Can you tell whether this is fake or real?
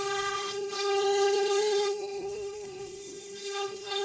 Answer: fake